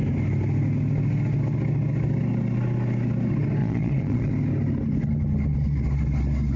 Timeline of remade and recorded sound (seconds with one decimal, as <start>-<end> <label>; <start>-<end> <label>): 0.0-3.6 recorded; 3.6-4.3 remade; 4.3-6.6 recorded